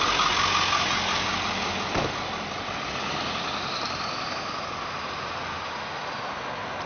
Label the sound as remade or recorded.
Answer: recorded